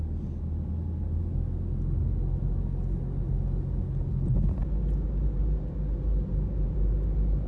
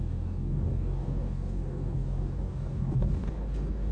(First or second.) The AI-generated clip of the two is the second